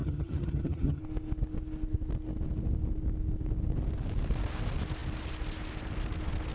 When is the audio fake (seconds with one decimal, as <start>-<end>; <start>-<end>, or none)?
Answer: 0.0-1.0